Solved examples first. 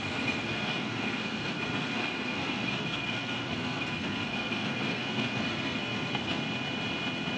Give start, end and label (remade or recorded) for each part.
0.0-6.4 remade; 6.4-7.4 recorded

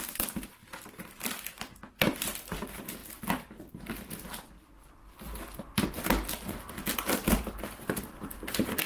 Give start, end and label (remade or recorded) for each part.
0.0-8.9 recorded